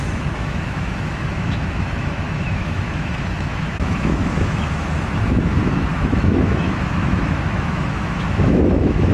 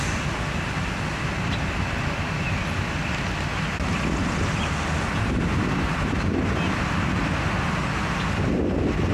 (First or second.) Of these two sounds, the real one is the second